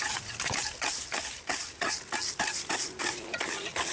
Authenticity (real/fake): real